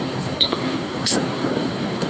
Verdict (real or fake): fake